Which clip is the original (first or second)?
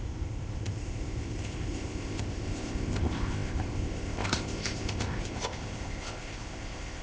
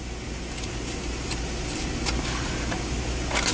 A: second